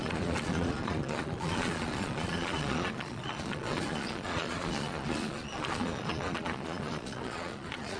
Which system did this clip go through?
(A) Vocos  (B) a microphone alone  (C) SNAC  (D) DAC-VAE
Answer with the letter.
A